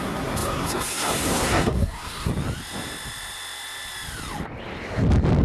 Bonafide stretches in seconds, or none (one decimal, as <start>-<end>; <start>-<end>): 2.3-5.4